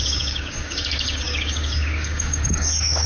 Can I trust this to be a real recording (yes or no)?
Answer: no